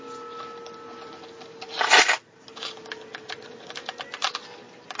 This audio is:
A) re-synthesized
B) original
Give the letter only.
B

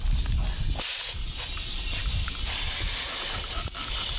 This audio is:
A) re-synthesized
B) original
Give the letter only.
B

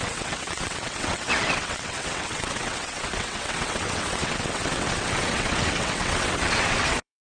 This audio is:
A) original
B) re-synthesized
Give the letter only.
B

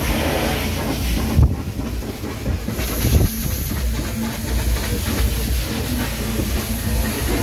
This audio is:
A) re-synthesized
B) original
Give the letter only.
B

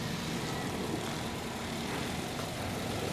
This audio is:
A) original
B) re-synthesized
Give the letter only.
A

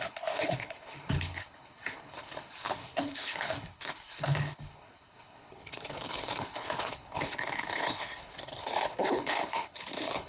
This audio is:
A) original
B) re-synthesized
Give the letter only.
B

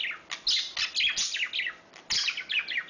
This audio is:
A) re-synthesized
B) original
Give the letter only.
B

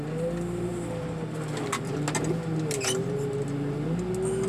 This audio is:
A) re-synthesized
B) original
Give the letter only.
B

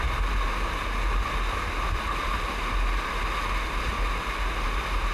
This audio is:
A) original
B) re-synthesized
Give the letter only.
A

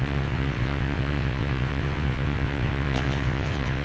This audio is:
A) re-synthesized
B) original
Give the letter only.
A